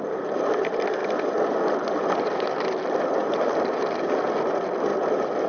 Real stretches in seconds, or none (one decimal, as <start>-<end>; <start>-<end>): 0.0-5.5